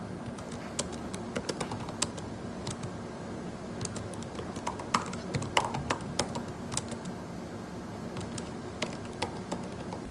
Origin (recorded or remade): recorded